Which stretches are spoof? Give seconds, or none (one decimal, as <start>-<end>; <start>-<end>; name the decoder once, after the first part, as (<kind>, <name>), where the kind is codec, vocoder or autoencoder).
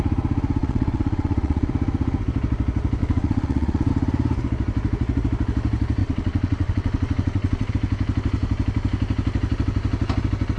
0.6-1.7 (vocoder, WaveNeXt); 3.0-3.9; 6.0-7.7